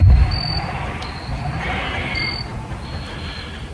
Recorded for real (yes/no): yes